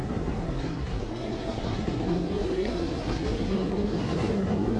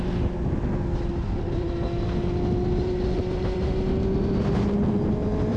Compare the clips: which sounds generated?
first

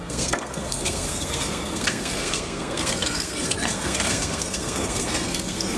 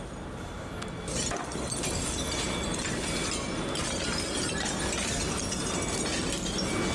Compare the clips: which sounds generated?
first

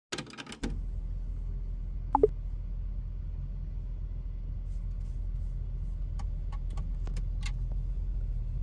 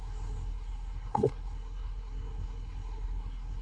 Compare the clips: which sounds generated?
second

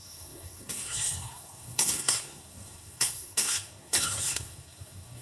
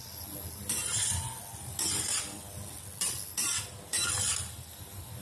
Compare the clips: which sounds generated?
first